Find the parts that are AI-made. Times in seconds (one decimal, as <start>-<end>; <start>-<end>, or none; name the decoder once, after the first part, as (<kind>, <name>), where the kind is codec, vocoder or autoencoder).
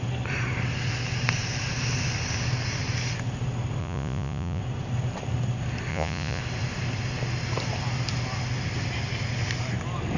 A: 3.8-4.6 (vocoder, Vocos); 5.9-6.4